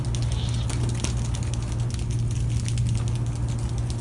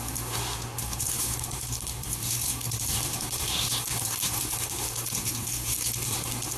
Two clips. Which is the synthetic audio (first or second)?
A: second